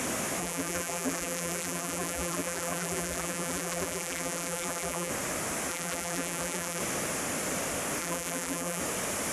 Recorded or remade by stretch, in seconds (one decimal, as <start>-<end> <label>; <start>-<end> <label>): 0.0-0.4 recorded; 0.4-5.1 remade; 5.1-5.7 recorded; 5.7-6.8 remade; 6.8-8.0 recorded; 8.0-8.8 remade; 8.8-9.3 recorded

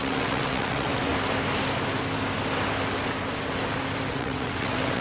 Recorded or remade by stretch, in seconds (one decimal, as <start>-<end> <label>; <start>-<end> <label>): 0.0-1.1 remade; 1.1-4.1 recorded; 4.1-5.0 remade

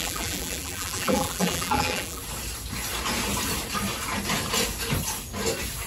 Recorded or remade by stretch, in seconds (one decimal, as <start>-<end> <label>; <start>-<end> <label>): 0.0-2.2 remade; 2.2-5.9 recorded

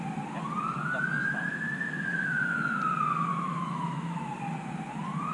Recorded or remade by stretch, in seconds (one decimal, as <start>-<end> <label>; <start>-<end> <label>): 0.0-1.2 recorded; 1.2-2.7 remade; 2.7-3.3 recorded; 3.3-4.3 remade; 4.3-5.3 recorded